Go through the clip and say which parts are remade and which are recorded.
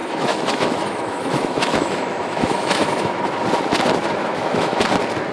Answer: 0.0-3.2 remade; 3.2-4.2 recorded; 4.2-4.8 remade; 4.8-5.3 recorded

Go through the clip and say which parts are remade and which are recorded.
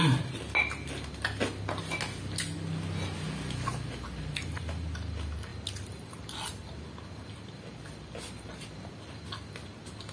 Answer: 0.0-10.1 recorded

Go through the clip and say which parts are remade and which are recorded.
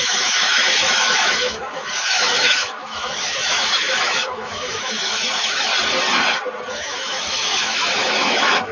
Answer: 0.0-5.7 remade; 5.7-6.7 recorded; 6.7-8.7 remade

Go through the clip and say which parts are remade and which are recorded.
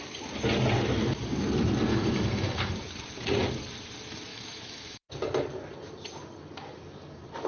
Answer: 0.0-1.9 recorded; 1.9-2.7 remade; 2.7-4.3 recorded; 4.3-5.1 remade; 5.1-7.5 recorded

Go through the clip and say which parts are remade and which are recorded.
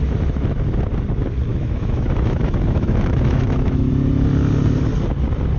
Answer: 0.0-1.5 recorded; 1.5-3.9 remade; 3.9-5.6 recorded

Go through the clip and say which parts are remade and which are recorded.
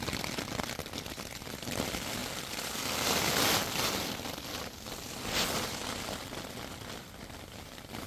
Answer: 0.0-8.1 recorded